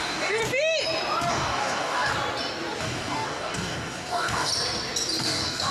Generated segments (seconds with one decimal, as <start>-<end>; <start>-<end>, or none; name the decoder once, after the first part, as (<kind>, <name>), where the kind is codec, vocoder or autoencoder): 0.0-0.4 (codec, DAC); 1.3-2.1; 2.8-4.5; 5.2-5.7